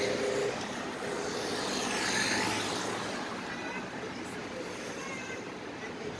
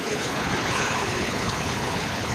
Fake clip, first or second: second